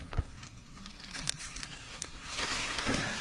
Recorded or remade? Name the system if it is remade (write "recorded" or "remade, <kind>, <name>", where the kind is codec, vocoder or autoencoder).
remade, codec, SNAC